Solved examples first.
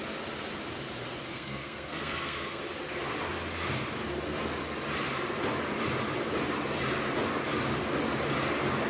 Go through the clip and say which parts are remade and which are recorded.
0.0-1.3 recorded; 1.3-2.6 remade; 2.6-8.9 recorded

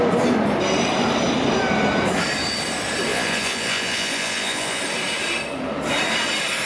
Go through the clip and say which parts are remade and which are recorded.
0.0-3.1 recorded; 3.1-4.8 remade; 4.8-6.7 recorded

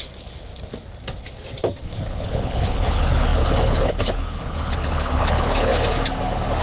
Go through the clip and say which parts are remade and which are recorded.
0.0-0.5 remade; 0.5-1.8 recorded; 1.8-5.7 remade; 5.7-6.6 recorded

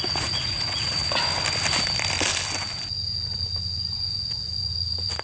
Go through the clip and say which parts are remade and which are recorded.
0.0-1.0 remade; 1.0-4.1 recorded; 4.1-5.2 remade

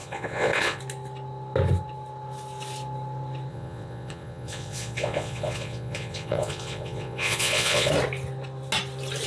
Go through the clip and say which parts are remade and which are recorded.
0.0-0.8 remade; 0.8-3.5 recorded; 3.5-7.9 remade; 7.9-9.3 recorded

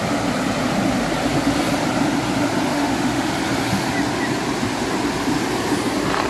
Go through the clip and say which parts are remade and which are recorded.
0.0-2.7 recorded; 2.7-3.3 remade; 3.3-6.3 recorded

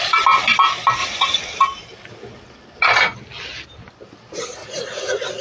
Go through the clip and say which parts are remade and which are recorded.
0.0-1.0 recorded; 1.0-1.6 remade; 1.6-4.6 recorded; 4.6-5.4 remade

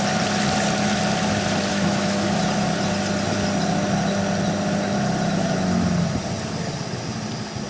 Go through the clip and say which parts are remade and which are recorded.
0.0-1.7 recorded; 1.7-2.4 remade; 2.4-7.7 recorded